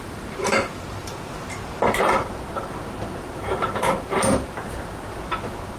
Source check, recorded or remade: remade